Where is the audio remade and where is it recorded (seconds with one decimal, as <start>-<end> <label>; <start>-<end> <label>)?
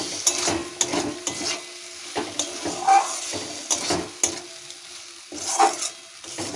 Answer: 0.0-6.6 recorded